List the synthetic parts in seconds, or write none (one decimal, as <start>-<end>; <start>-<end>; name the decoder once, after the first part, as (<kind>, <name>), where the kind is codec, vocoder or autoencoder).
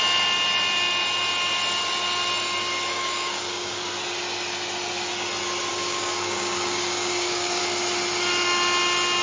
2.9-3.8 (codec, DAC); 5.7-7.6